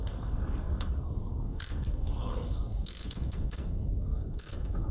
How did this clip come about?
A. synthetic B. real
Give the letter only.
A